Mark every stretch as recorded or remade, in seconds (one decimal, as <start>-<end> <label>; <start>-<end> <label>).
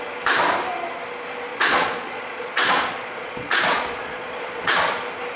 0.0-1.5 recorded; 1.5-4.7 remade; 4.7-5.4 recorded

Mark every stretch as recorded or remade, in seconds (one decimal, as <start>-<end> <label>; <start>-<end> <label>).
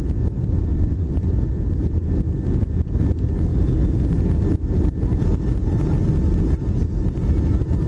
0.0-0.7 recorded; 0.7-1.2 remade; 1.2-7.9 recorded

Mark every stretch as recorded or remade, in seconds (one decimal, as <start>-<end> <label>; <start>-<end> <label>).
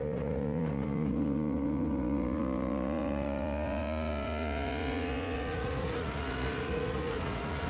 0.0-7.7 remade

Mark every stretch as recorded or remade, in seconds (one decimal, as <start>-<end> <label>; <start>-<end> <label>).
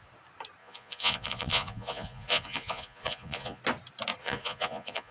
0.0-0.6 recorded; 0.6-3.6 remade; 3.6-4.2 recorded; 4.2-5.1 remade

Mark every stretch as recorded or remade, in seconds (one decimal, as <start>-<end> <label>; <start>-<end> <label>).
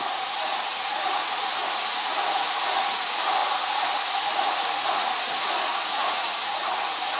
0.0-7.2 remade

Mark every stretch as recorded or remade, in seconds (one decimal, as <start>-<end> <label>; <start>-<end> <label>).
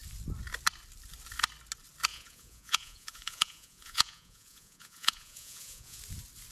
0.0-2.1 recorded; 2.1-6.0 remade; 6.0-6.5 recorded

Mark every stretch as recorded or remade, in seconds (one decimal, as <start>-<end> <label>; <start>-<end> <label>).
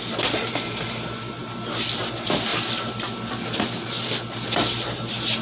0.0-5.4 recorded